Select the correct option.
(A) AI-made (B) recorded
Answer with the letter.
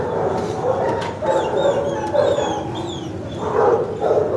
B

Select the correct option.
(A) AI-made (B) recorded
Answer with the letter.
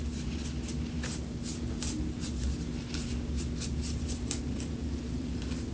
B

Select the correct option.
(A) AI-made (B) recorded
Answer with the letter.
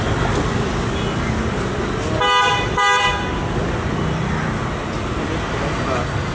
B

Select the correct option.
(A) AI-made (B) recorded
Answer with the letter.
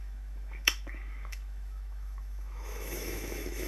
A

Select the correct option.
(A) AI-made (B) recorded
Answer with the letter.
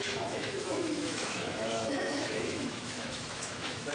A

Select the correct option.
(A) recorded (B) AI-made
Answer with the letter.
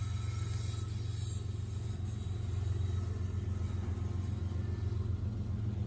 A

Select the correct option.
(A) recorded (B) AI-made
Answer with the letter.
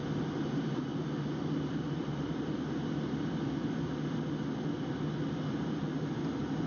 A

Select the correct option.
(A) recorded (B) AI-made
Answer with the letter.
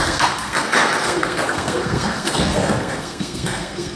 B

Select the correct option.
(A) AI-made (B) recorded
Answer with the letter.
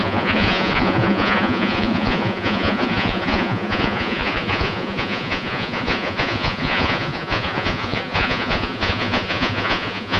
A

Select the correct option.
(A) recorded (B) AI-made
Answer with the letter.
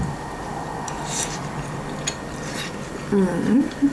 B